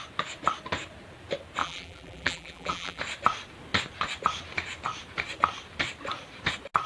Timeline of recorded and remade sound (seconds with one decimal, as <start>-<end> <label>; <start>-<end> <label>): 0.0-1.6 recorded; 1.6-3.0 remade; 3.0-6.9 recorded